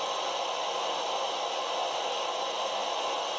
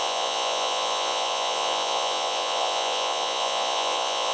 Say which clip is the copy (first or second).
second